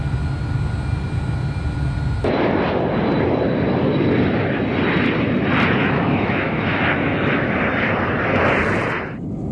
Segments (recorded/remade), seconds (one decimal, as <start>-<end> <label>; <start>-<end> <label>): 0.0-5.8 recorded; 5.8-7.5 remade; 7.5-9.5 recorded